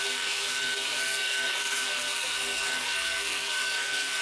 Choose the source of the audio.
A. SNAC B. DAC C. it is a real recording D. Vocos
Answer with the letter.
A